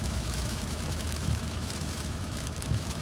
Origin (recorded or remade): remade